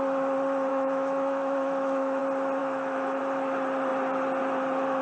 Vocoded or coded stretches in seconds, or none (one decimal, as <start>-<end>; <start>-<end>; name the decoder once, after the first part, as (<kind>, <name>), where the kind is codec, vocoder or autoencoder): 0.7-2.2 (autoencoder, DAC-VAE); 2.6-3.2